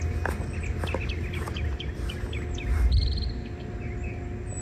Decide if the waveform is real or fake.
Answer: real